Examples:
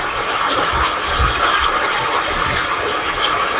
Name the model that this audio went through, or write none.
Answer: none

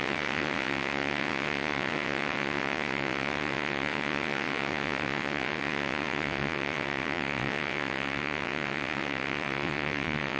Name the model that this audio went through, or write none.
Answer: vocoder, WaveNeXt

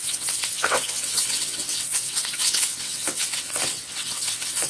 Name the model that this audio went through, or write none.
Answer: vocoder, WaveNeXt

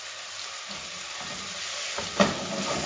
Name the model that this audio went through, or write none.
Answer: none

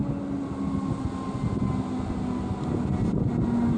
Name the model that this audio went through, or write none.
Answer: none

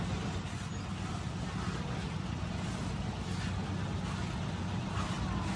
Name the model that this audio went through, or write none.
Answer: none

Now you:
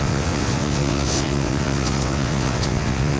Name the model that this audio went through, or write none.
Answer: vocoder, WaveNeXt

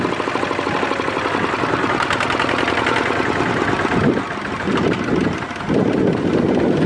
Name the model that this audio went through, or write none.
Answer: none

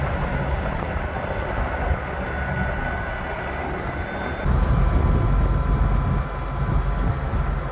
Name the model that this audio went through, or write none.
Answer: none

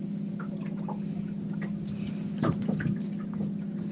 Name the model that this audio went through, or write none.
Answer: none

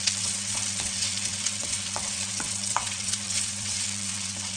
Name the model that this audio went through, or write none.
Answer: vocoder, WaveNeXt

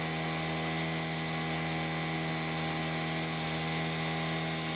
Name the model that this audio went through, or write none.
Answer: none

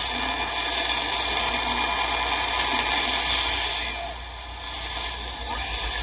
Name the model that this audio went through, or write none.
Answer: none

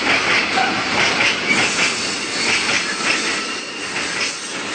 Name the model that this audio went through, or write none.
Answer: none